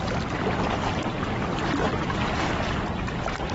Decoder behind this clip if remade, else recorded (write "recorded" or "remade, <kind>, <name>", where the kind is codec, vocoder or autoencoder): recorded